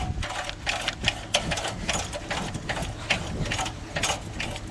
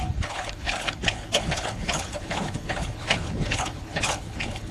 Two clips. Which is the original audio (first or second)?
first